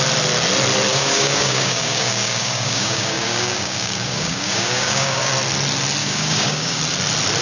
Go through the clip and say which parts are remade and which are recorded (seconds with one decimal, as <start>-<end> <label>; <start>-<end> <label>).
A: 0.0-0.9 recorded; 0.9-5.3 remade; 5.3-6.0 recorded; 6.0-6.8 remade; 6.8-7.4 recorded

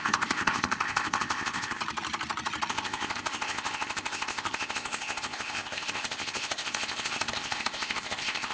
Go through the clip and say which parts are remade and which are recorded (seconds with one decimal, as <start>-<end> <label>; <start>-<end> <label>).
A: 0.0-1.8 remade; 1.8-2.7 recorded; 2.7-8.5 remade

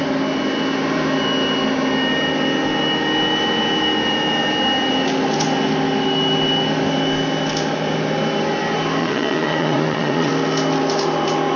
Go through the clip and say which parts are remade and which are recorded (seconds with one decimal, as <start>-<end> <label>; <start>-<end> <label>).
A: 0.0-9.0 recorded; 9.0-10.3 remade; 10.3-11.6 recorded

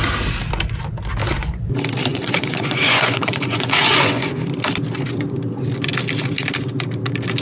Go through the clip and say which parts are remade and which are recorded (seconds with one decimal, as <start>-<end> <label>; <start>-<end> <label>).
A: 0.0-1.2 recorded; 1.2-1.7 remade; 1.7-2.1 recorded; 2.1-4.4 remade; 4.4-7.4 recorded

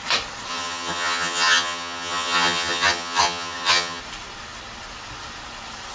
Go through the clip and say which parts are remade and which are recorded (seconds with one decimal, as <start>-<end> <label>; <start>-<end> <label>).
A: 0.0-0.5 recorded; 0.5-4.0 remade; 4.0-5.9 recorded